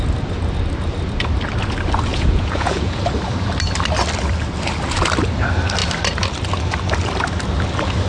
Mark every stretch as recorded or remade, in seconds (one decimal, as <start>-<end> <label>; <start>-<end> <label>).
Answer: 0.0-2.1 recorded; 2.1-3.0 remade; 3.0-8.1 recorded